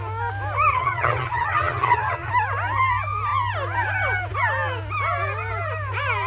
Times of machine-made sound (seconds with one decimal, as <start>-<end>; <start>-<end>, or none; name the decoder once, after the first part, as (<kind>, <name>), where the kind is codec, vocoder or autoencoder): 0.7-2.3 (vocoder, HiFi-GAN)